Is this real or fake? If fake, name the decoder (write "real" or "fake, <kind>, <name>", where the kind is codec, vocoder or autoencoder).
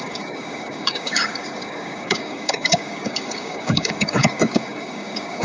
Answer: fake, codec, DAC